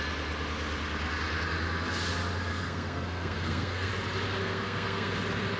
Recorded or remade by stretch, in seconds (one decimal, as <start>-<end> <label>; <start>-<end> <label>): 0.0-2.5 recorded; 2.5-3.9 remade; 3.9-4.4 recorded; 4.4-5.1 remade; 5.1-5.6 recorded